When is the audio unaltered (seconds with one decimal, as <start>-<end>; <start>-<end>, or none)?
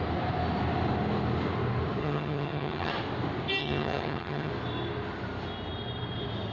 0.0-2.0; 2.9-3.6; 4.5-6.5